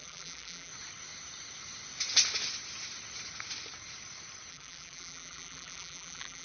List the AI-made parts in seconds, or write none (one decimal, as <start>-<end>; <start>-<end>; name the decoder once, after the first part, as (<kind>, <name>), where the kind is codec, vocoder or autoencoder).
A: 0.0-0.7 (vocoder, BigVGAN v2); 4.5-6.4